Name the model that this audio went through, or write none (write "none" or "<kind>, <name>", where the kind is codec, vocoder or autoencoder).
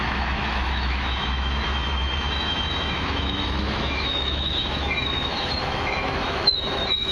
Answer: autoencoder, DAC-VAE